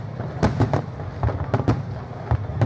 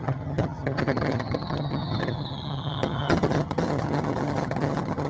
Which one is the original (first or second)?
first